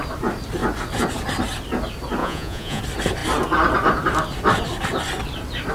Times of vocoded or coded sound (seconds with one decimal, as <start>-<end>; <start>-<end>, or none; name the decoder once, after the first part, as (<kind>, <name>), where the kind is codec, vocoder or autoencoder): 2.2-2.8 (vocoder, Vocos)